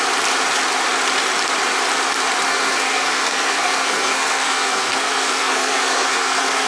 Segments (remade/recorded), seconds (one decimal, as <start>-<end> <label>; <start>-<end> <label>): 0.0-2.5 recorded; 2.5-6.7 remade